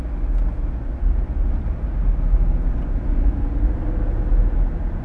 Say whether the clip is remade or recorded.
recorded